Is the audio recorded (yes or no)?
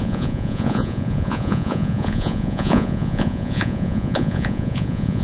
no